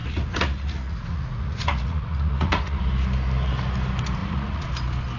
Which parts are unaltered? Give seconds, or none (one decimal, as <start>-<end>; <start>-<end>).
2.8-4.2; 4.7-5.2